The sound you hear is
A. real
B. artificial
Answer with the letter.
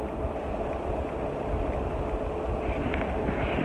A